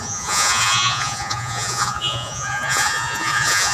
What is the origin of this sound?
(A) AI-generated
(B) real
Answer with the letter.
A